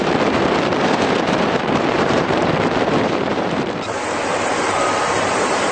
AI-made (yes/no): yes